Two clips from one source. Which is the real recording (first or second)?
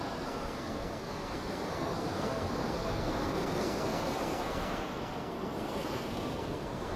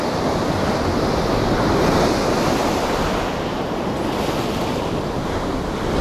second